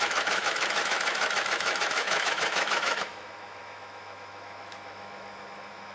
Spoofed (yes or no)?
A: yes